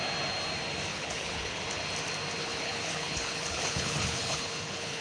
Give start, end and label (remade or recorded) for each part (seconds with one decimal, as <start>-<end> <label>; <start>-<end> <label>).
0.0-0.9 recorded; 0.9-1.6 remade; 1.6-2.4 recorded; 2.4-5.0 remade